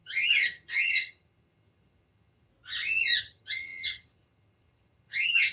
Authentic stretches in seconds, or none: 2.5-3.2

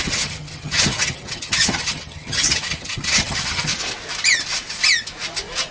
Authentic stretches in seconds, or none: 3.7-5.7

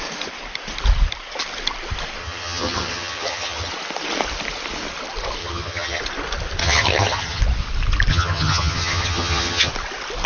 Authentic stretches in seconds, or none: 0.0-2.2; 3.7-5.4; 6.0-6.6; 7.4-8.1; 9.7-10.3

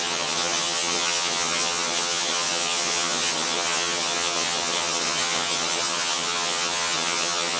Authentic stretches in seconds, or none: none

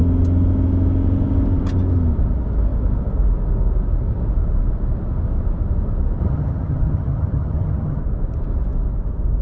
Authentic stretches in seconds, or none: 0.0-6.2; 8.0-9.4

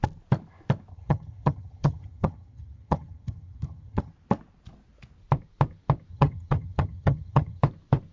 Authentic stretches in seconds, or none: 0.0-0.9; 4.1-6.1; 7.6-8.1